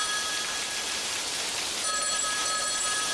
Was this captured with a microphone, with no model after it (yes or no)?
no